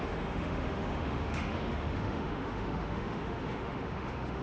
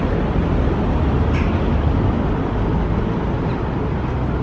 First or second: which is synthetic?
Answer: first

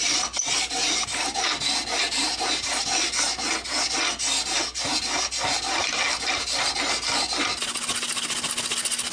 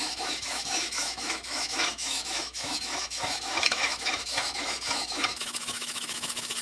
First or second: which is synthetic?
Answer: second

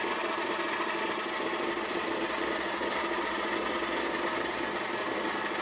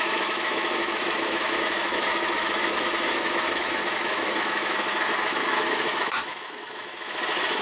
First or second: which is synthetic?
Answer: second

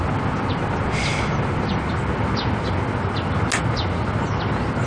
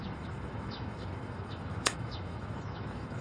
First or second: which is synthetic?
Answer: second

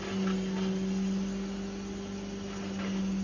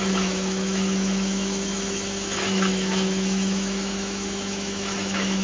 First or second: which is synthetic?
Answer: second